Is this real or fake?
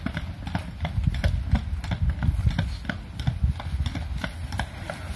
real